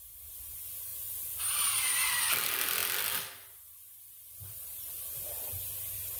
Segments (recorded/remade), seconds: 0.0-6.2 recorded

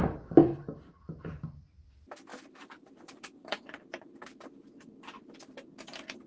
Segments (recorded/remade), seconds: 0.0-0.4 recorded; 0.4-1.0 remade; 1.0-2.3 recorded; 2.3-6.3 remade

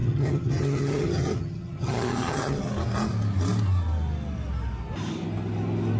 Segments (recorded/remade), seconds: 0.0-2.7 remade; 2.7-6.0 recorded

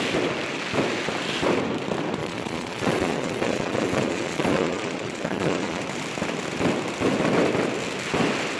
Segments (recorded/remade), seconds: 0.0-2.2 recorded; 2.2-5.8 remade; 5.8-8.6 recorded

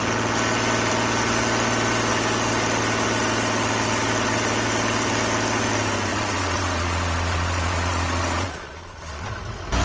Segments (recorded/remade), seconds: 0.0-6.1 recorded; 6.1-9.3 remade; 9.3-9.8 recorded

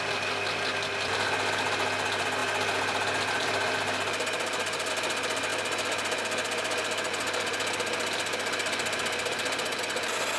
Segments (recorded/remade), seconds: 0.0-10.4 recorded

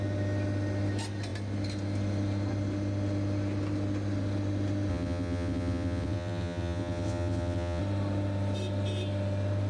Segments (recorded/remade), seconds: 0.0-4.9 recorded; 4.9-7.8 remade; 7.8-9.7 recorded